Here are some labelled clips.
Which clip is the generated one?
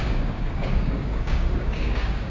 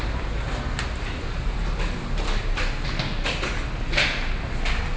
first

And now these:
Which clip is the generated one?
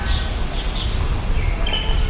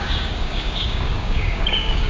second